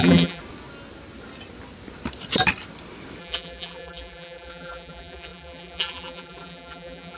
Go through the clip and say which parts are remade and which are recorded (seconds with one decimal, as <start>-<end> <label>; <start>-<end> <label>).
0.0-0.4 remade; 0.4-3.2 recorded; 3.2-7.2 remade